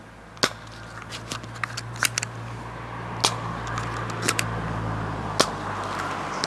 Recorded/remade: recorded